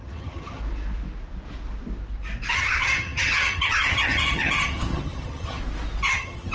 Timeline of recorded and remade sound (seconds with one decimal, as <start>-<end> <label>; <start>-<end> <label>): 0.0-0.6 remade; 0.6-2.5 recorded; 2.5-5.6 remade; 5.6-6.1 recorded; 6.1-6.5 remade